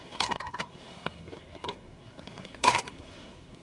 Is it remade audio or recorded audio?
remade